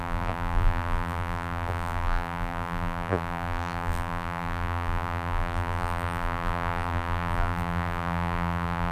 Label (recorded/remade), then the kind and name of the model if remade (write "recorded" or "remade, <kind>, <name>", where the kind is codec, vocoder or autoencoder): remade, vocoder, BigVGAN v2